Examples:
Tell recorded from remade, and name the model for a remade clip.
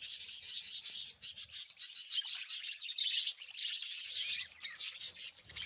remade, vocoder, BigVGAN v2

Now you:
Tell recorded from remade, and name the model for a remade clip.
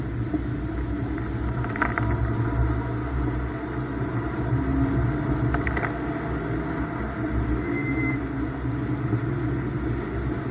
recorded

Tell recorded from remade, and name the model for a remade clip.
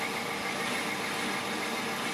recorded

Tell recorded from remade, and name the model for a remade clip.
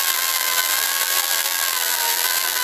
remade, vocoder, BigVGAN v2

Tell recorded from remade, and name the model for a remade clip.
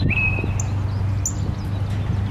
recorded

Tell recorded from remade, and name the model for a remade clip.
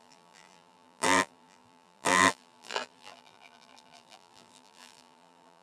remade, vocoder, BigVGAN v2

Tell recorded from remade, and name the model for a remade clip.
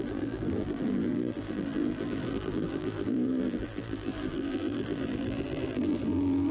remade, vocoder, BigVGAN v2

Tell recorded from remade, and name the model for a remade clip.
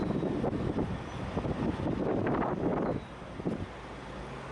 recorded